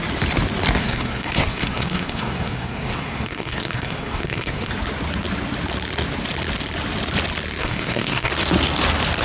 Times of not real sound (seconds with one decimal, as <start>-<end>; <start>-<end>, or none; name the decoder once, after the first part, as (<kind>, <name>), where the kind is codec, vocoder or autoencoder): 0.8-4.7 (codec, SNAC); 7.6-8.3